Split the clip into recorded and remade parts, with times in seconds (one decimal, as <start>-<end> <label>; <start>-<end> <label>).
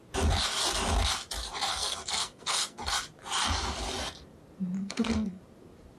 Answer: 0.0-1.7 recorded; 1.7-3.0 remade; 3.0-4.8 recorded; 4.8-5.4 remade; 5.4-6.0 recorded